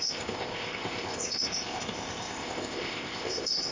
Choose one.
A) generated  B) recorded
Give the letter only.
A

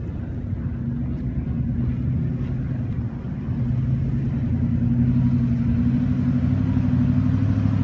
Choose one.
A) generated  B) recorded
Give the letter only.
B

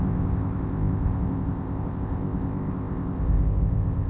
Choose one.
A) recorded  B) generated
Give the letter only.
B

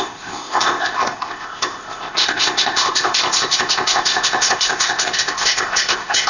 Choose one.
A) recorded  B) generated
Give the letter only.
B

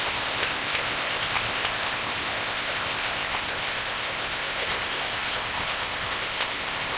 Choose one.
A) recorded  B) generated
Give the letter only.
B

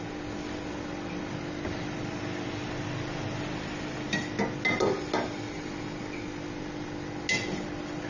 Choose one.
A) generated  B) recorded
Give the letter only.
B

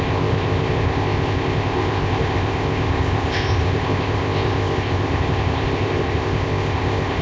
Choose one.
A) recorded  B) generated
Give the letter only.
B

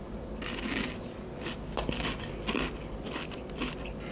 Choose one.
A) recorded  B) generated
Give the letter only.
A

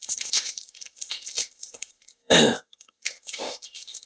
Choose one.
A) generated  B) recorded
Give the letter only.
A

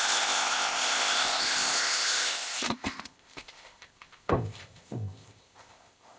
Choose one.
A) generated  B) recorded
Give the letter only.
A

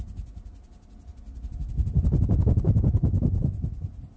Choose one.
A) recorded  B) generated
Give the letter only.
A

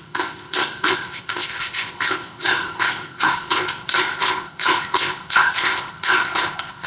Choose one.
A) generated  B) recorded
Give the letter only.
A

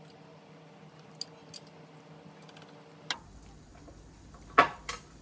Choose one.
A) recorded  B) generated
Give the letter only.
A